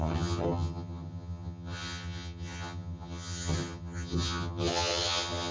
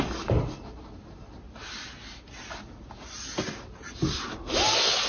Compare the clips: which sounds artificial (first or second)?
first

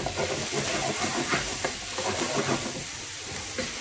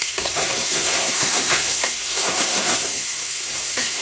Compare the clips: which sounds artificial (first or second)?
second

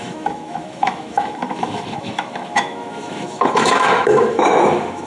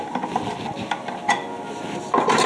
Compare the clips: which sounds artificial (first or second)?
first